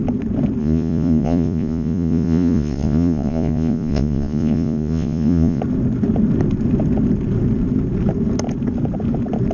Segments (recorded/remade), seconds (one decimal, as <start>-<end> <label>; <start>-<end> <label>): 0.0-0.6 recorded; 0.6-5.6 remade; 5.6-9.5 recorded